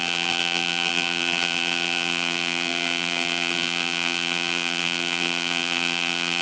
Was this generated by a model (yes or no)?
yes